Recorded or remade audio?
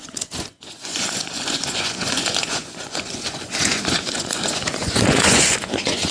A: remade